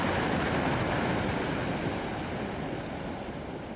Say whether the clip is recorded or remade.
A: recorded